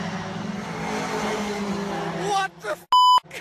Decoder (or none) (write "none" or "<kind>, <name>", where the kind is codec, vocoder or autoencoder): none